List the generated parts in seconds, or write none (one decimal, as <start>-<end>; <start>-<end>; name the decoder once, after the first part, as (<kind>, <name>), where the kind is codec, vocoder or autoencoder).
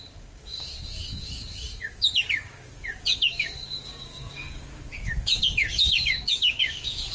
0.0-7.1 (codec, DAC)